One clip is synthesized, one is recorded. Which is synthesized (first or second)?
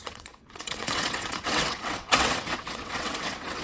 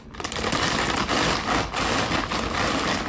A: first